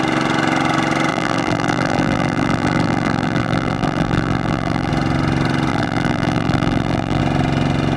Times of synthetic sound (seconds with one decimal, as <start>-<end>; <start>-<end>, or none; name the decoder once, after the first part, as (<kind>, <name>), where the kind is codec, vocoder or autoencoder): 1.1-4.9 (vocoder, BigVGAN v2); 5.7-7.2